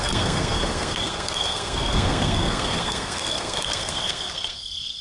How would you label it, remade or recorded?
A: remade